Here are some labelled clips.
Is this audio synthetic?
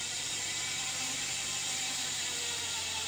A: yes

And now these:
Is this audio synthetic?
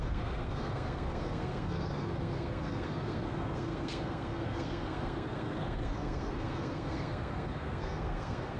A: yes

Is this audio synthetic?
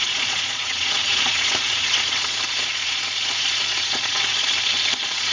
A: yes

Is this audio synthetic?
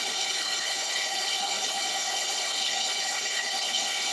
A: yes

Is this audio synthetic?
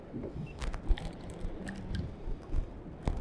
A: no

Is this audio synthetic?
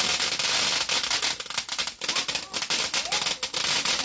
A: no